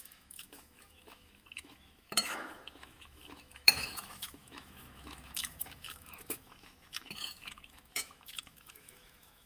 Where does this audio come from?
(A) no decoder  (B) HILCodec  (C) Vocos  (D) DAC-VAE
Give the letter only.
D